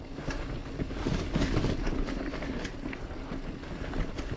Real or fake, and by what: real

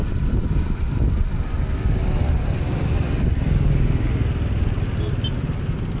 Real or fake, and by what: real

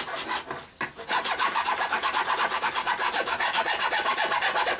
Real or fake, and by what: real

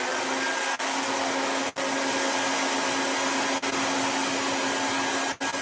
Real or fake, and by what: real